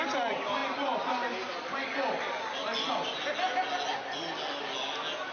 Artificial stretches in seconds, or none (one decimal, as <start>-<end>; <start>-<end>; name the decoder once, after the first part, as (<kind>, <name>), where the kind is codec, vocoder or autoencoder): none